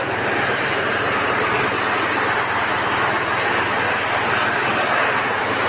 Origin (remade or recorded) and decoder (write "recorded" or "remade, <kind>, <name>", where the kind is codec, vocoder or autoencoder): recorded